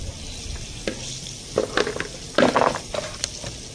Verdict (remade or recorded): recorded